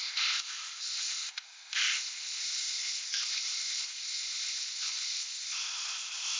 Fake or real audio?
fake